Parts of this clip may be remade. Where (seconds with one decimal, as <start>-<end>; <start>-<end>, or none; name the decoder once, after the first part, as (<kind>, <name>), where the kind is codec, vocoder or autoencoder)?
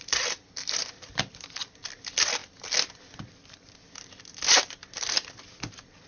0.0-6.1 (vocoder, BigVGAN v2)